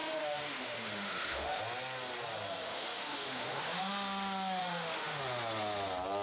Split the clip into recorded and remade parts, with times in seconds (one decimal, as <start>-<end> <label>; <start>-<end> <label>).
0.0-1.6 remade; 1.6-2.6 recorded; 2.6-3.9 remade; 3.9-4.6 recorded; 4.6-5.2 remade; 5.2-6.2 recorded